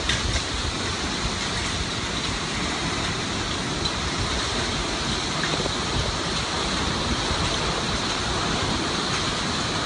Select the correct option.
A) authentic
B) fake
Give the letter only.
A